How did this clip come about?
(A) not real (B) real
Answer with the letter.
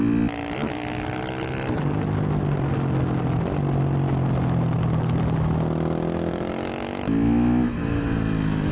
B